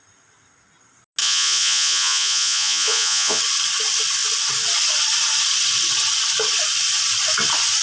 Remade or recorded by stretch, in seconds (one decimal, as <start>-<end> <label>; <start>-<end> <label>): 0.0-1.2 recorded; 1.2-3.4 remade; 3.4-7.8 recorded